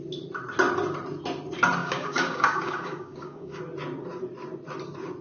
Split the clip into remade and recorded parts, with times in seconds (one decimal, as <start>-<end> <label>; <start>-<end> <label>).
0.0-1.8 recorded; 1.8-3.6 remade; 3.6-5.2 recorded